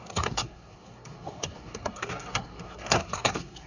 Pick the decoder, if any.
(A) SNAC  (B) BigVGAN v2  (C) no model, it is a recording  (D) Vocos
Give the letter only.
A